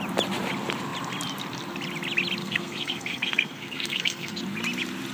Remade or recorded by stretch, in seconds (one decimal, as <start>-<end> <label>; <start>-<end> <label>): 0.0-2.4 recorded; 2.4-4.4 remade; 4.4-5.1 recorded